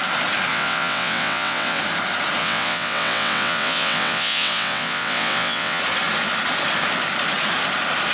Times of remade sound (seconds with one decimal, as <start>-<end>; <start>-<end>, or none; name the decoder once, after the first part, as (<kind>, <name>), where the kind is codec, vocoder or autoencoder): 0.5-1.8 (vocoder, WaveNeXt); 2.4-5.8